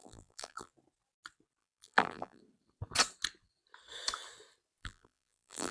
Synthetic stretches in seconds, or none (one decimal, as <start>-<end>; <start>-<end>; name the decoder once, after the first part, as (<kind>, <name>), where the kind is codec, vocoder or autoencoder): 0.0-0.7 (vocoder, BigVGAN v2); 1.6-2.4; 4.8-5.7